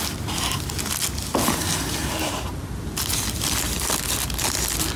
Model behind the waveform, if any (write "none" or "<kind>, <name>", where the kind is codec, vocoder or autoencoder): none